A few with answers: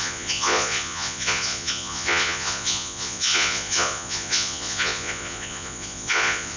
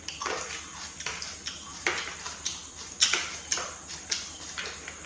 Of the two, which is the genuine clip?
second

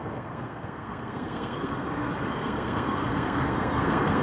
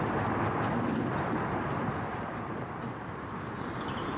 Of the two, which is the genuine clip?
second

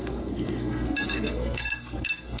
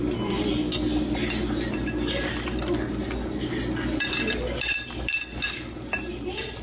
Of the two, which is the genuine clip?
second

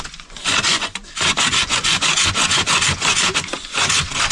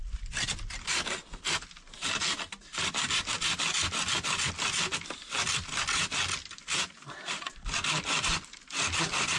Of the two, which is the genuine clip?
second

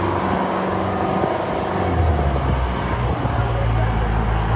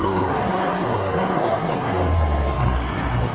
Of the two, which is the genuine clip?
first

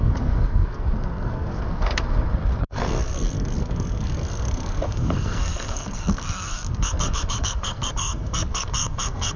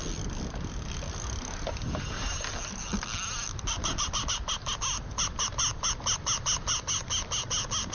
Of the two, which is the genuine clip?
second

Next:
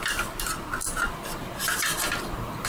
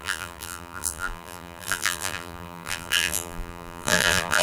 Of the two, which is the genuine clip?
first